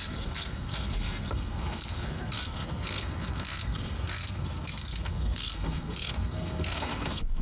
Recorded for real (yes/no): no